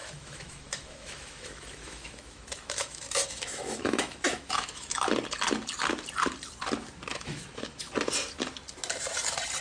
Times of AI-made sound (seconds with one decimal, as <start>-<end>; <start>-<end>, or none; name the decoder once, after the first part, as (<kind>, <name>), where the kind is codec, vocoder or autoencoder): 0.0-5.1 (autoencoder, DAC-VAE); 7.1-7.9